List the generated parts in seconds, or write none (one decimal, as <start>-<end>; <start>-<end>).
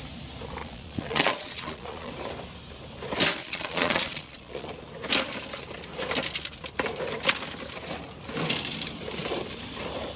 0.6-2.1; 3.4-4.7